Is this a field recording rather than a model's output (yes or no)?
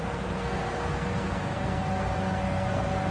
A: no